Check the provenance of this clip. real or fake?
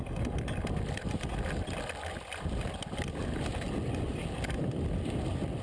real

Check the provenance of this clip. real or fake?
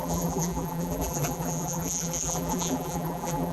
fake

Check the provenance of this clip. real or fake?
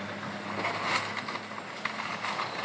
real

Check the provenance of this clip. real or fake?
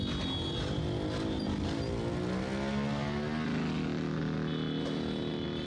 real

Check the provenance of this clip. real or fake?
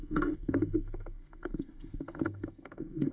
fake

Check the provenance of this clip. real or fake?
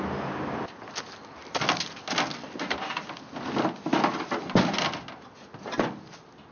real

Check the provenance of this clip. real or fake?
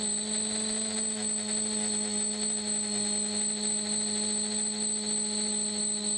real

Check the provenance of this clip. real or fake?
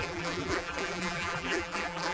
fake